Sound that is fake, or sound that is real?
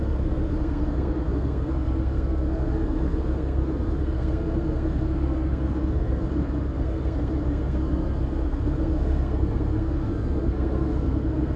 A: fake